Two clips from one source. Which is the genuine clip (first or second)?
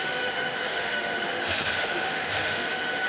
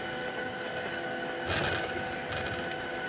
second